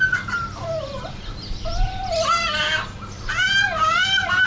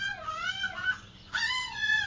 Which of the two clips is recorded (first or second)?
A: first